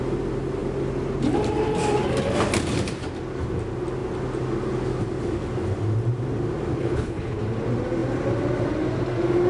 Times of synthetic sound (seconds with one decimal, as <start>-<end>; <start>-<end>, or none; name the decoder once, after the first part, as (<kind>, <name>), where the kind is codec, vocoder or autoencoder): 6.8-7.4 (codec, HILCodec)